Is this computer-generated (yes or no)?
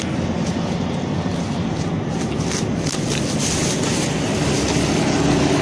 no